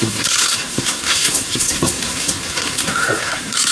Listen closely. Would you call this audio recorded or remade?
remade